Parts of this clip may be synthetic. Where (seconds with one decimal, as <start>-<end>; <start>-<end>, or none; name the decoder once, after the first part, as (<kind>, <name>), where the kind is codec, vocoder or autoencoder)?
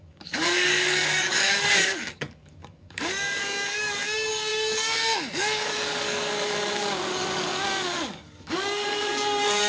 0.0-9.7 (codec, DAC)